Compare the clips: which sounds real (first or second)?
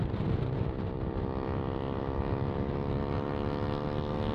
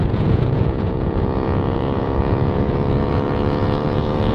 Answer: first